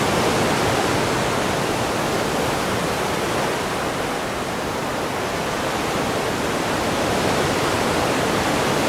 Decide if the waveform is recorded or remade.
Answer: recorded